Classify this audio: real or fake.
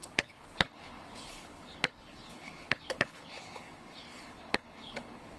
fake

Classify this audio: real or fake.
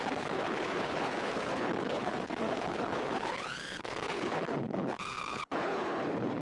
fake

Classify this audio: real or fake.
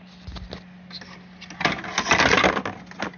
real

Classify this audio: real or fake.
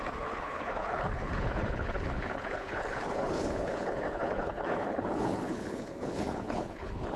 fake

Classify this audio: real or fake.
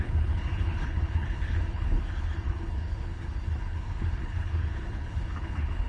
fake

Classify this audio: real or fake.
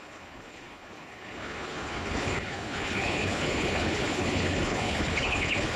fake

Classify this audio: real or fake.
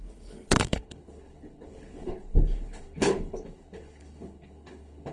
fake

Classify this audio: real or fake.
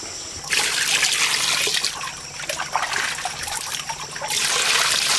real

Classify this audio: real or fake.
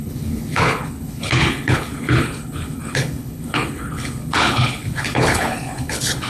fake